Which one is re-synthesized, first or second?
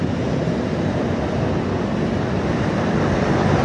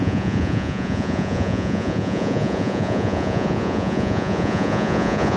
second